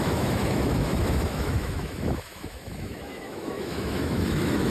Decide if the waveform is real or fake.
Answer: fake